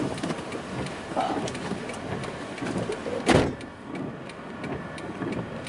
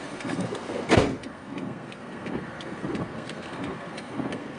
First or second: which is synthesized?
second